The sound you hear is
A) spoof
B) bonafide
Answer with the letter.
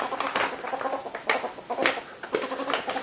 B